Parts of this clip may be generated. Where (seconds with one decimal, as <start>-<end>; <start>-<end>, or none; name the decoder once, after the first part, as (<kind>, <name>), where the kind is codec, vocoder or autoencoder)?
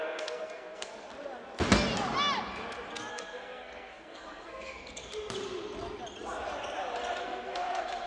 0.0-1.1 (codec, SNAC); 3.1-5.1; 7.2-8.1